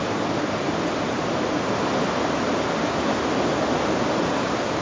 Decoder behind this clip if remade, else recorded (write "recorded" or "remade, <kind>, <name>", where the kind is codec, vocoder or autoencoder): recorded